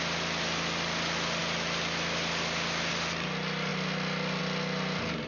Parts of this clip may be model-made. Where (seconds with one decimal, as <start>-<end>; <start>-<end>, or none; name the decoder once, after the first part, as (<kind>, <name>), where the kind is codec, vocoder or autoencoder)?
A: none